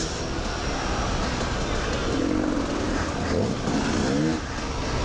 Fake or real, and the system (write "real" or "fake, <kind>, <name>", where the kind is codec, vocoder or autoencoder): real